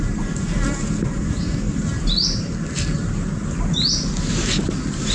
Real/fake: real